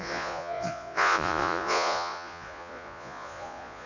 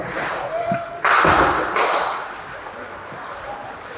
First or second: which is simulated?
first